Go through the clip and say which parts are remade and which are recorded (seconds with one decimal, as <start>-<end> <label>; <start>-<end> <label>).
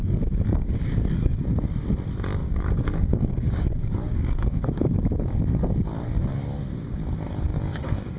0.0-1.4 remade; 1.4-2.4 recorded; 2.4-5.0 remade; 5.0-7.5 recorded; 7.5-8.2 remade